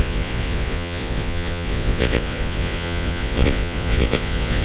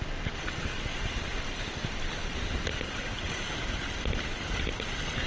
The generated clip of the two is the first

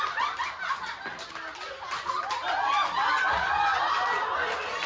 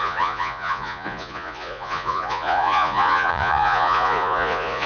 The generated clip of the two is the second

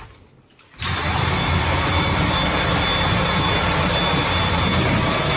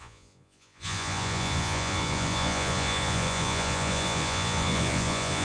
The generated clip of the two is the second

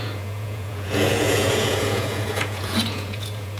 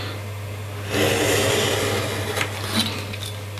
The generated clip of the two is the first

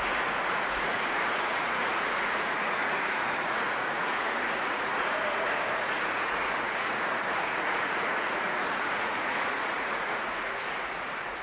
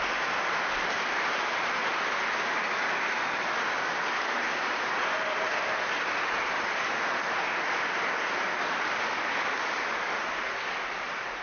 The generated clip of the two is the first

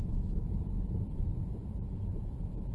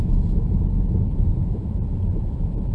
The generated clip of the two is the first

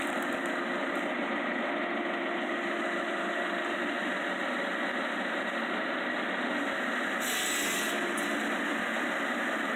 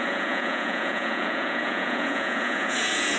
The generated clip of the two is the second